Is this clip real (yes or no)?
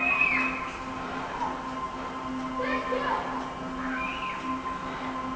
yes